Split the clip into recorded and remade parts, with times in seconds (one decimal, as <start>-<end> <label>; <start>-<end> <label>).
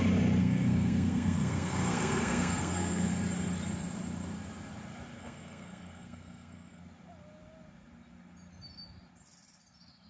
0.0-0.4 recorded; 0.4-3.1 remade; 3.1-5.2 recorded; 5.2-6.8 remade; 6.8-10.1 recorded